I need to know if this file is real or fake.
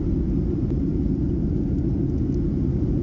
real